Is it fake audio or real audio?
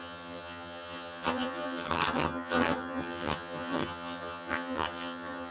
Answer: fake